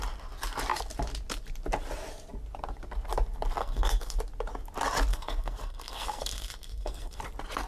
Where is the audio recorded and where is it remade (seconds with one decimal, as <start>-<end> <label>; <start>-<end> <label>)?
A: 0.0-3.6 recorded; 3.6-4.2 remade; 4.2-5.1 recorded; 5.1-7.2 remade; 7.2-7.7 recorded